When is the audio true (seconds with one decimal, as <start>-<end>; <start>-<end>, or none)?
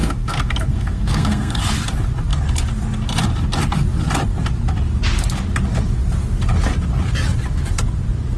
1.6-8.4